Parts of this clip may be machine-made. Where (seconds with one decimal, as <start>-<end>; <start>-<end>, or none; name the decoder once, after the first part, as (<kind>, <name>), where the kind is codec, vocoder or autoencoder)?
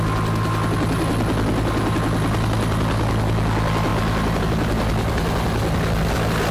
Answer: 3.9-4.4 (vocoder, BigVGAN v2)